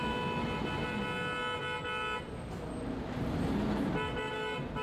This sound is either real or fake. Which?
real